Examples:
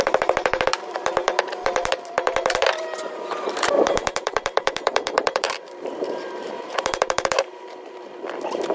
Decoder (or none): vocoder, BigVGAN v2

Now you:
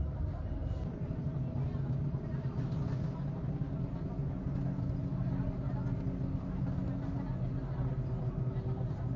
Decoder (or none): none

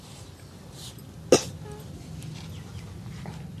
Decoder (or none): none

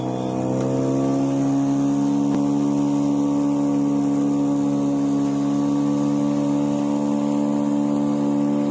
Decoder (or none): none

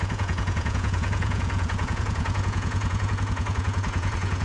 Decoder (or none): vocoder, Vocos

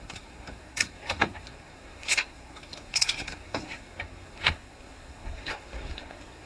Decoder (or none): codec, SNAC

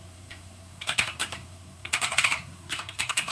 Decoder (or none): codec, SNAC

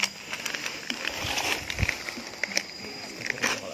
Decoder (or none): vocoder, BigVGAN v2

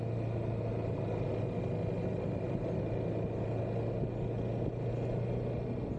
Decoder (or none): none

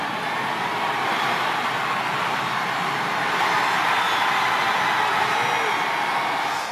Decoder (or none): none